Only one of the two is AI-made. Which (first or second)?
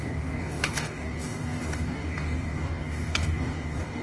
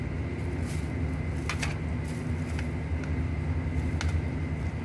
first